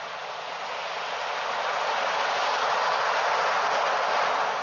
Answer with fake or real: real